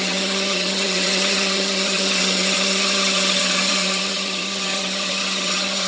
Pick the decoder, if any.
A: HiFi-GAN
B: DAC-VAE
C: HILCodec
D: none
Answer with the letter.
A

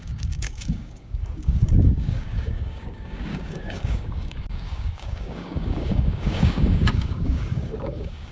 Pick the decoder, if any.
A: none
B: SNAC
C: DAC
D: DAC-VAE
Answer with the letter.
C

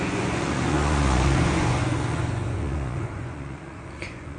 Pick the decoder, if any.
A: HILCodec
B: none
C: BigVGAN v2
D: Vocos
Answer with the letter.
D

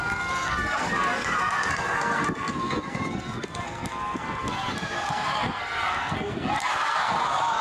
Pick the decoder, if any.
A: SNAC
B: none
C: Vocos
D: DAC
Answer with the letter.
A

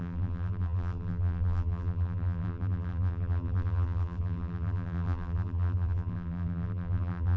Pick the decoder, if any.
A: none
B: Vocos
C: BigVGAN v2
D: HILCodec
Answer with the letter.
C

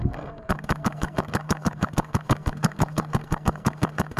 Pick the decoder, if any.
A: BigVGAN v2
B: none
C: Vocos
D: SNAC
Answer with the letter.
D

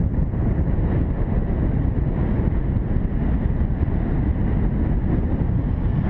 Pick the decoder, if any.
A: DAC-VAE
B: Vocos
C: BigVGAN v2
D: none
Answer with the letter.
D